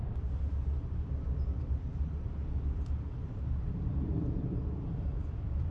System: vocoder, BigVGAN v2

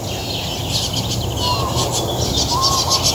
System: none